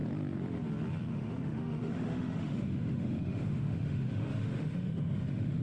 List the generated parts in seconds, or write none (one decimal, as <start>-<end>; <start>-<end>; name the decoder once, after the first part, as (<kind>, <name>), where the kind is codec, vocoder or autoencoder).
1.1-5.6 (autoencoder, DAC-VAE)